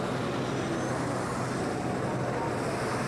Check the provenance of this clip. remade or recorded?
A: recorded